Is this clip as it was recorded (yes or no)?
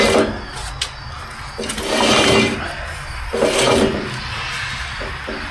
yes